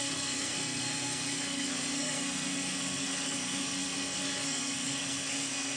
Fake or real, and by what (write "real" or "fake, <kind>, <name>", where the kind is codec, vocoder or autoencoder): fake, codec, SNAC